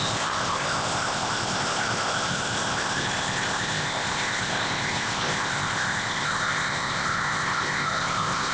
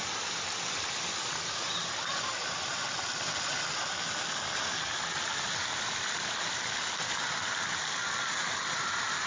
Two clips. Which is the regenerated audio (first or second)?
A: first